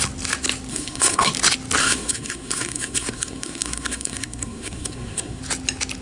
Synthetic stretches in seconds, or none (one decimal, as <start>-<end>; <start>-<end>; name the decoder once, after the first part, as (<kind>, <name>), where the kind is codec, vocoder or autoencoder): 0.7-1.3 (codec, SNAC); 1.8-5.4